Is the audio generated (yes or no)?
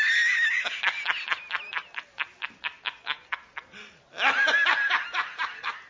no